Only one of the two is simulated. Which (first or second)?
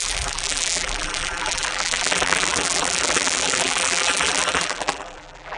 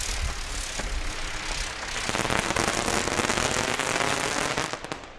first